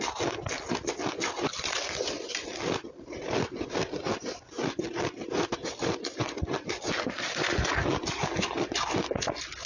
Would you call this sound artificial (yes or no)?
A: yes